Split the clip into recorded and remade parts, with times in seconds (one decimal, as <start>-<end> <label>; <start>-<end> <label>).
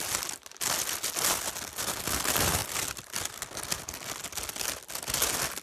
0.0-5.6 recorded